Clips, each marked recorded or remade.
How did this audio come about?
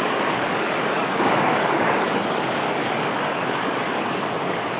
remade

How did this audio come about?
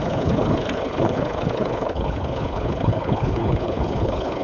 remade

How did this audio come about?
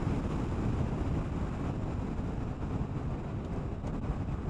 recorded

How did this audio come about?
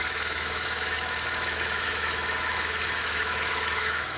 remade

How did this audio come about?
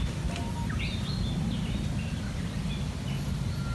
recorded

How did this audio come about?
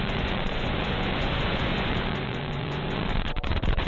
remade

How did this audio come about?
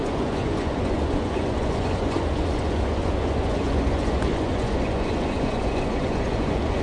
remade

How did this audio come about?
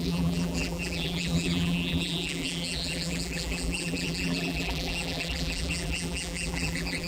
remade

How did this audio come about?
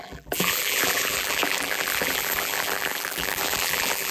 remade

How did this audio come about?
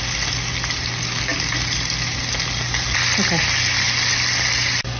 recorded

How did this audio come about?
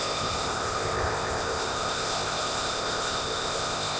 remade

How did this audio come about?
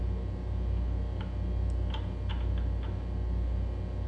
recorded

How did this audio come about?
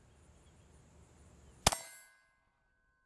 recorded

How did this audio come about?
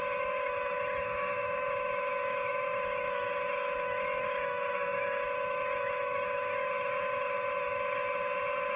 remade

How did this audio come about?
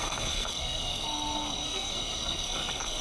remade